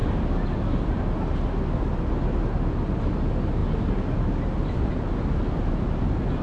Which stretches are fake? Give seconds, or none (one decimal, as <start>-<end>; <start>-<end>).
none